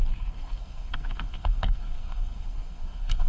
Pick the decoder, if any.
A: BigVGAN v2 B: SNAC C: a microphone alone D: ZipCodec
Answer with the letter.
B